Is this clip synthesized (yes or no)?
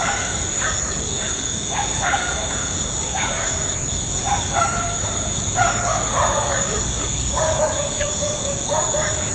yes